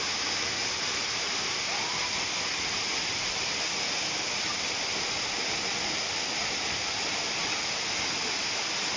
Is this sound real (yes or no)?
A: no